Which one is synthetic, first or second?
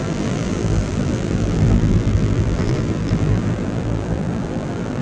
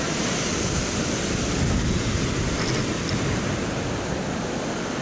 first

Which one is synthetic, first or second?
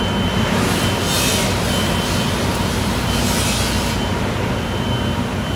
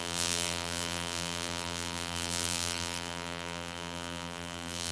second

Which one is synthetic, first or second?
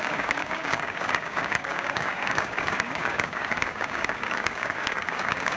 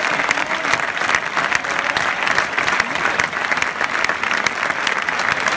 first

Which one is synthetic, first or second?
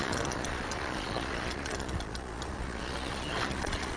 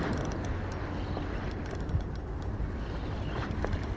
first